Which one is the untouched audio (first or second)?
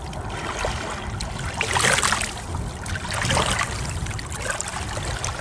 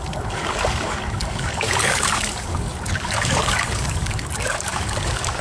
first